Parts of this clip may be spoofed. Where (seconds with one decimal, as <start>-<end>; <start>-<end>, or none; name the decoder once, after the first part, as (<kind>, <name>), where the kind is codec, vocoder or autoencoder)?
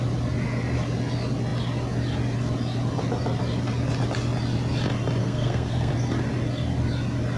5.2-5.9 (codec, SNAC)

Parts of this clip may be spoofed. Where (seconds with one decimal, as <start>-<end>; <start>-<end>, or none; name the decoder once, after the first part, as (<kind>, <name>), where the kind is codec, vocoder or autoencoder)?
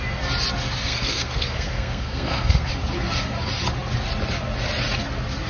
0.8-2.7 (codec, SNAC)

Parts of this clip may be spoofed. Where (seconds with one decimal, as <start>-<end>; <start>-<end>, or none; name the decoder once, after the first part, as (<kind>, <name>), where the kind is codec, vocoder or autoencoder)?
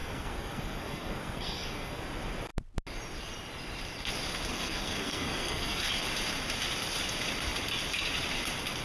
0.0-2.0 (codec, SNAC); 4.5-5.9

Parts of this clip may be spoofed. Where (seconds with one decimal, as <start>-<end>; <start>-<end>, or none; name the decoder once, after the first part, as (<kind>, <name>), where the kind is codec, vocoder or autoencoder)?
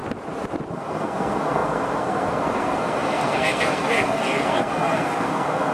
0.7-5.7 (codec, SNAC)